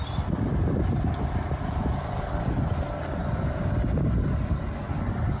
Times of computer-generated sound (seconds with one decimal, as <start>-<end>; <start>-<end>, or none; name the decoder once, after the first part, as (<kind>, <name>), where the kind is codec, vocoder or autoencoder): 0.0-3.2 (vocoder, BigVGAN v2); 4.8-5.4